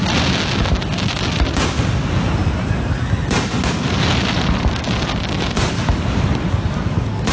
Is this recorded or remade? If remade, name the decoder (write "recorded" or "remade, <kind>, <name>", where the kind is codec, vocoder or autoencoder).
recorded